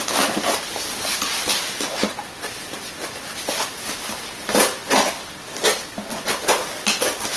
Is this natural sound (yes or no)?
yes